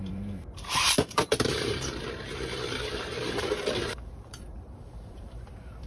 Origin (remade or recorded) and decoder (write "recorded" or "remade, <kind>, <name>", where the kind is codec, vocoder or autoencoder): remade, vocoder, BigVGAN v2